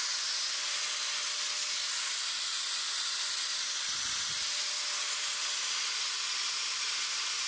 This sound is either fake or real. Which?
real